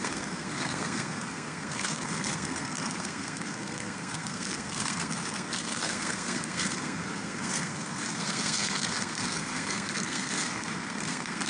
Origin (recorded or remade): remade